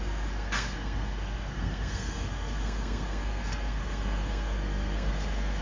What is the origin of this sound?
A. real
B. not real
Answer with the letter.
B